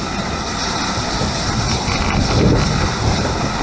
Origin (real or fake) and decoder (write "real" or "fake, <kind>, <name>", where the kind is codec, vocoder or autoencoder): real